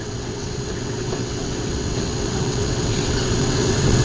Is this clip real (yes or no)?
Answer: no